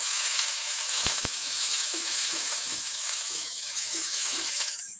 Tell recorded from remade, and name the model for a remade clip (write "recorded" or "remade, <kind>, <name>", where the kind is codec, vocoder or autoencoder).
remade, autoencoder, DAC-VAE